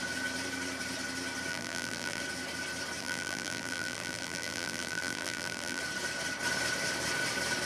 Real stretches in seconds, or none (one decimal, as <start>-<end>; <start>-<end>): 0.0-1.5; 2.2-3.0; 5.8-7.7